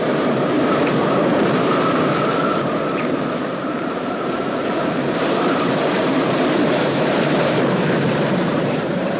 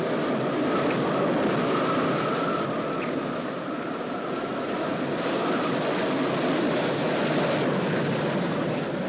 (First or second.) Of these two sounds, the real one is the second